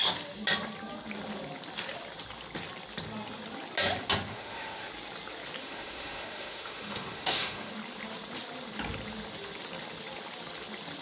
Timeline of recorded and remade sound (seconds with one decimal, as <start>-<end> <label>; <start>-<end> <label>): 0.0-4.3 recorded; 4.3-4.9 remade; 4.9-5.6 recorded; 5.6-7.7 remade; 7.7-11.0 recorded